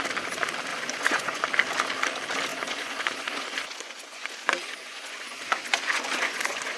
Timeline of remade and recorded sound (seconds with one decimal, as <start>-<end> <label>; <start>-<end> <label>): 0.0-0.7 recorded; 0.7-1.4 remade; 1.4-2.5 recorded; 2.5-6.8 remade